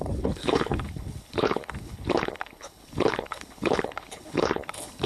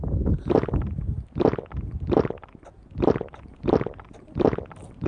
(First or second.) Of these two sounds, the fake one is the first